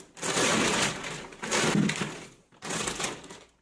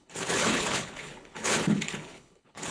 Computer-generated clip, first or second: second